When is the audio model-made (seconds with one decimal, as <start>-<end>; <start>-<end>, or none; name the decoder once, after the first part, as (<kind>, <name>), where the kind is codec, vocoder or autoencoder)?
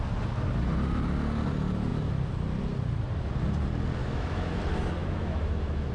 4.0-4.6 (autoencoder, DAC-VAE); 5.0-5.9